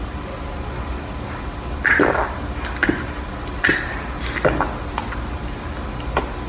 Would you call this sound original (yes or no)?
yes